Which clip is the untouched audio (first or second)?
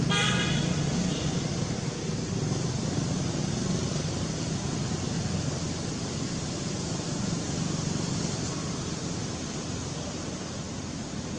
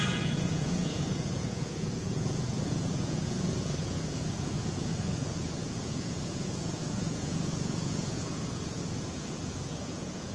first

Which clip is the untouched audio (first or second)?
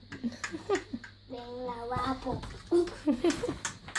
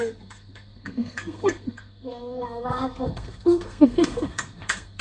first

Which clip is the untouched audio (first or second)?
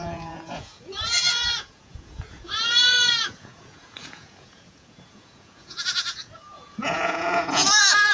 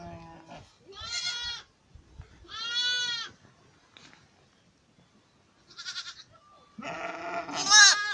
second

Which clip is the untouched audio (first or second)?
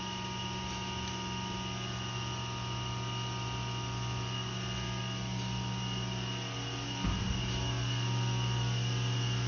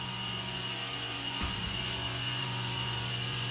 first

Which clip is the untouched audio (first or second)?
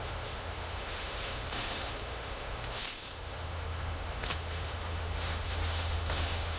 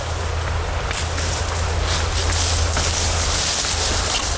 second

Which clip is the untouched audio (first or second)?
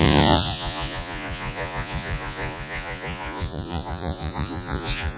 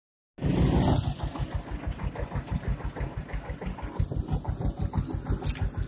second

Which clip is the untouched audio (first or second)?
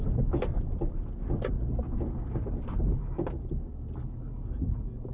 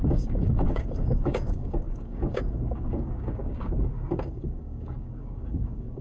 first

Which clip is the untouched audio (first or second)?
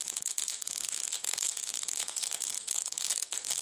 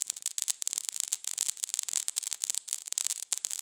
second